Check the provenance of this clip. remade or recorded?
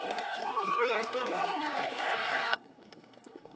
remade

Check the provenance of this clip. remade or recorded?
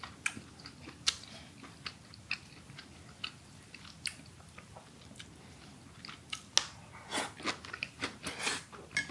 recorded